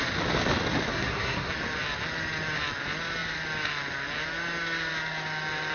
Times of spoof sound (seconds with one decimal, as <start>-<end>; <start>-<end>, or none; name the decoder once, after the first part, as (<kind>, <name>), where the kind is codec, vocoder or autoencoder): 0.9-1.5 (codec, SNAC)